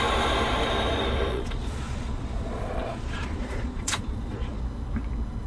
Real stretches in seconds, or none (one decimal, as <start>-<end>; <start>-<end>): 0.0-1.3; 4.6-5.5